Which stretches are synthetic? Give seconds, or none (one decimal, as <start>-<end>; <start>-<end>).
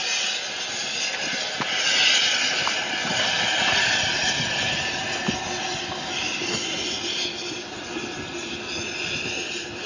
none